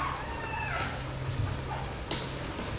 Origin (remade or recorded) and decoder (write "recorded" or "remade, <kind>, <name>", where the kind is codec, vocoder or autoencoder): recorded